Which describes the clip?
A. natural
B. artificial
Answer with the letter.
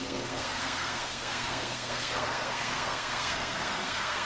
B